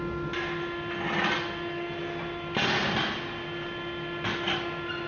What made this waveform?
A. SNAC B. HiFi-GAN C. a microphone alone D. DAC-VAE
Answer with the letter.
C